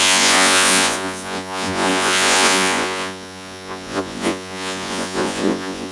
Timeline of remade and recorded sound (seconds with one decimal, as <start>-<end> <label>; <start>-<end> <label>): 0.0-5.9 remade